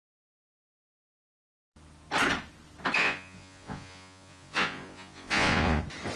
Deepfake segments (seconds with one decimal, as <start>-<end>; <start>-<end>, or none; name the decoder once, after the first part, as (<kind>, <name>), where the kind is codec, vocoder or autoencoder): 3.0-5.8 (vocoder, Vocos)